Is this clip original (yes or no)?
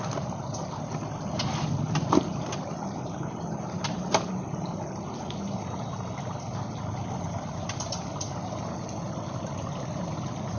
yes